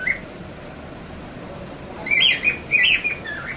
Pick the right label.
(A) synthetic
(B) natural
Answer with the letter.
B